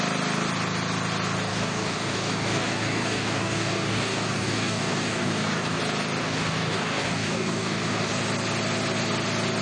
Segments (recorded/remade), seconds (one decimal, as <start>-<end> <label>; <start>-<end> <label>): 0.0-1.5 recorded; 1.5-5.8 remade; 5.8-6.2 recorded; 6.2-8.1 remade; 8.1-9.6 recorded